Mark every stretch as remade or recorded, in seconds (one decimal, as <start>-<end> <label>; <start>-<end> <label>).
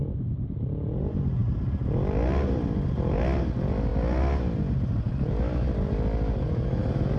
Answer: 0.0-7.2 recorded